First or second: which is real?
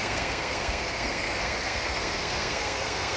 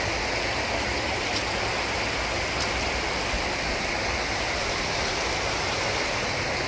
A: second